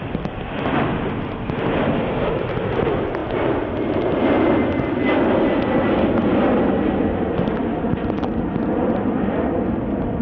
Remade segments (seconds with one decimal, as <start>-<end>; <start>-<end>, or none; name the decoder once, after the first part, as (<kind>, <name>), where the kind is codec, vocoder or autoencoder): none